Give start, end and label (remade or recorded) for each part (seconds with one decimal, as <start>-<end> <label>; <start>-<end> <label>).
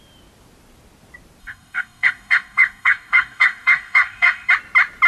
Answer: 0.0-1.4 recorded; 1.4-4.5 remade; 4.5-5.1 recorded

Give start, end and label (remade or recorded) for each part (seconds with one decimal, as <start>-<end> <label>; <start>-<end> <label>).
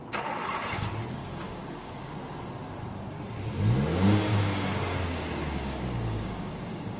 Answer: 0.0-1.2 recorded; 1.2-2.1 remade; 2.1-4.3 recorded; 4.3-7.0 remade